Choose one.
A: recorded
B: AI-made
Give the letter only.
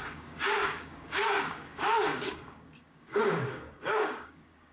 B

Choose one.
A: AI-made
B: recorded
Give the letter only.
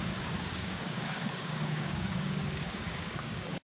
A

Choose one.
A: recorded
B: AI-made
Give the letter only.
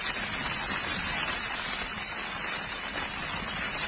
A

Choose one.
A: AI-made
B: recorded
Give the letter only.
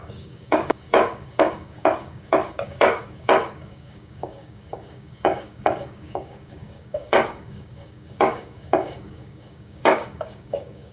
A